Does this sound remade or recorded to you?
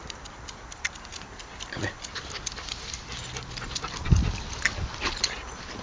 remade